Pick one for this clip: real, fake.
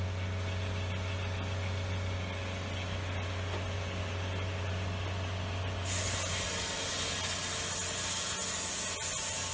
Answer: real